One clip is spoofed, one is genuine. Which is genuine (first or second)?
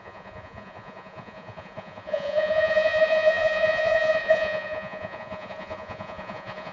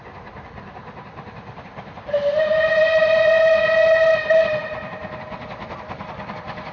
second